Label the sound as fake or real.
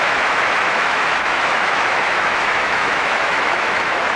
fake